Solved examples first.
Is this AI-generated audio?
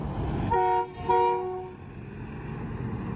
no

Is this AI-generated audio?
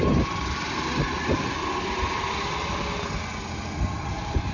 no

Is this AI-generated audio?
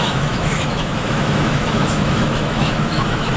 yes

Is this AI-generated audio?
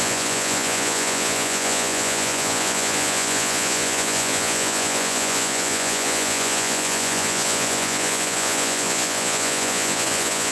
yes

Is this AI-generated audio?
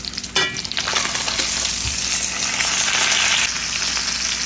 no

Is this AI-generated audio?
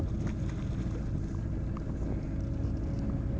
no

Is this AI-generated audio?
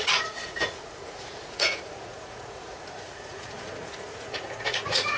yes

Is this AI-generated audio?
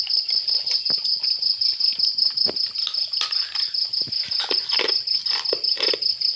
no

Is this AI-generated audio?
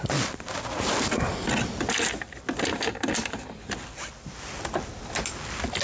no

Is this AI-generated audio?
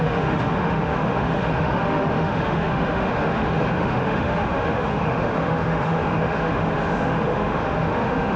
yes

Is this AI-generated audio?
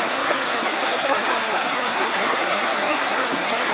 yes